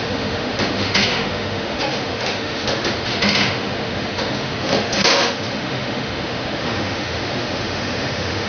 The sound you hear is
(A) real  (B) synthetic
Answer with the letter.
B